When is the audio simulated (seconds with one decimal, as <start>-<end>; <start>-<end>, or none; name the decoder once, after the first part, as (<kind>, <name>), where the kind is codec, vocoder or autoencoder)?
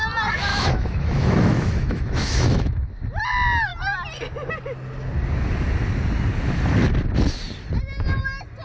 0.5-2.9 (autoencoder, DAC-VAE)